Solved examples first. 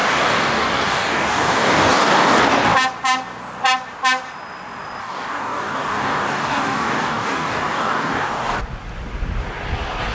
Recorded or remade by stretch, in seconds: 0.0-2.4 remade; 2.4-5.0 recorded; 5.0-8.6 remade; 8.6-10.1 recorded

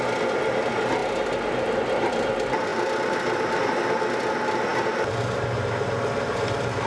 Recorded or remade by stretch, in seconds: 0.0-6.9 recorded

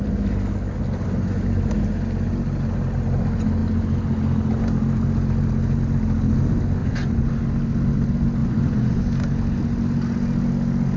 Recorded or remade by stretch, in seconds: 0.0-6.8 recorded; 6.8-7.3 remade; 7.3-8.4 recorded; 8.4-9.0 remade; 9.0-11.0 recorded

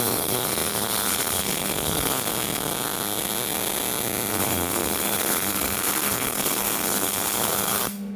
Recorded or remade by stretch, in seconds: 0.0-2.3 remade; 2.3-4.3 recorded; 4.3-8.2 remade

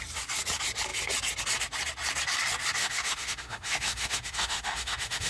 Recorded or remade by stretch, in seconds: 0.0-2.8 recorded; 2.8-5.3 remade

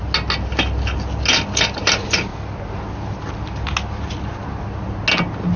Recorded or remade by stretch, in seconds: 0.0-5.6 recorded

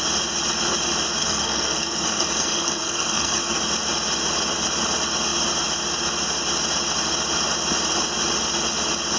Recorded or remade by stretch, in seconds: 0.0-1.2 recorded; 1.2-3.6 remade; 3.6-9.2 recorded